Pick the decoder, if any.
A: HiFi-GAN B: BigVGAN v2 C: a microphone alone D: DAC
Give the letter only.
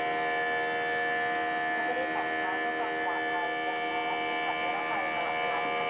C